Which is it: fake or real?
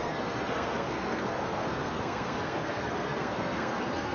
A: fake